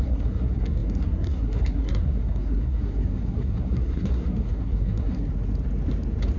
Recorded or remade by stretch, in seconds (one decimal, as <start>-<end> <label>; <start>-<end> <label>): 0.0-5.3 remade; 5.3-6.4 recorded